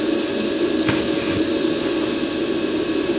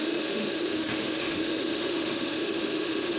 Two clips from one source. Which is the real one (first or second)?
first